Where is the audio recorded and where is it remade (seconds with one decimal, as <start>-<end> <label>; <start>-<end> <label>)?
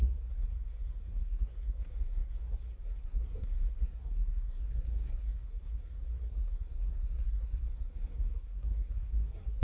0.0-9.6 remade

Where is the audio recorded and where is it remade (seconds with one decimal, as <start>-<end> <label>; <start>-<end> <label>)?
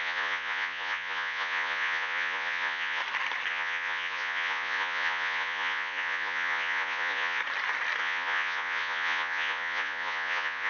0.0-3.0 remade; 3.0-3.5 recorded; 3.5-7.4 remade; 7.4-8.0 recorded; 8.0-10.7 remade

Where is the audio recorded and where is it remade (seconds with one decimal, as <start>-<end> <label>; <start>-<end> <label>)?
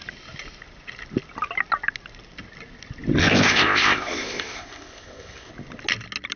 0.0-3.2 recorded; 3.2-5.5 remade; 5.5-6.4 recorded